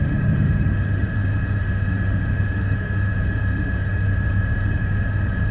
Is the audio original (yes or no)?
no